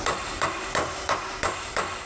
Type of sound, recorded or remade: remade